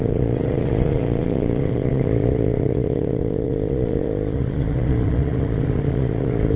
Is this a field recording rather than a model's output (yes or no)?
no